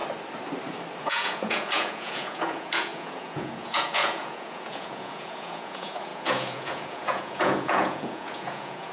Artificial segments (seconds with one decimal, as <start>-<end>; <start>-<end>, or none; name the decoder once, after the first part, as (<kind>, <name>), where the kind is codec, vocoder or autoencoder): 1.0-8.9 (vocoder, Vocos)